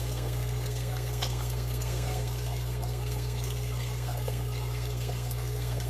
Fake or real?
fake